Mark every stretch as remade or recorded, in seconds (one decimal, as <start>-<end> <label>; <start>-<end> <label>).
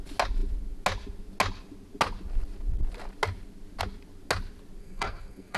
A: 0.0-4.8 recorded; 4.8-5.6 remade